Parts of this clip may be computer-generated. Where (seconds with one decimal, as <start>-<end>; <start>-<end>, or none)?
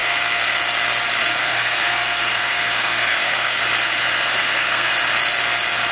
0.0-0.6; 1.2-3.6; 4.4-4.9